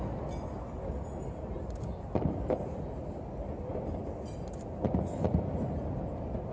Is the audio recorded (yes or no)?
yes